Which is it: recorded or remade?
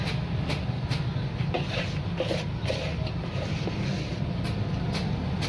recorded